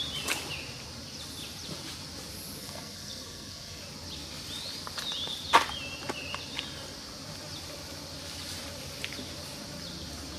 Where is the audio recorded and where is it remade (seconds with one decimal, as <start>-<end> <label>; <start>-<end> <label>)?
0.0-2.6 recorded; 2.6-3.8 remade; 3.8-10.4 recorded

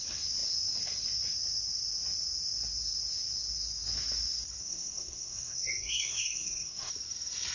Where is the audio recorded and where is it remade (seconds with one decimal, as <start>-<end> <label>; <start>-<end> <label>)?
0.0-4.6 recorded; 4.6-6.9 remade; 6.9-7.5 recorded

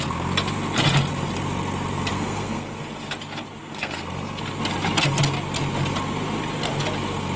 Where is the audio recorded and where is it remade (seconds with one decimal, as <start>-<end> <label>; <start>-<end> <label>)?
0.0-2.1 recorded; 2.1-2.8 remade; 2.8-3.6 recorded; 3.6-4.4 remade; 4.4-7.4 recorded

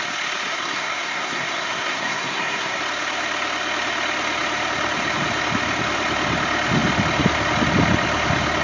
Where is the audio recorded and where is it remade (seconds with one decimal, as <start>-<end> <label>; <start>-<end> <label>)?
0.0-0.5 recorded; 0.5-2.8 remade; 2.8-8.6 recorded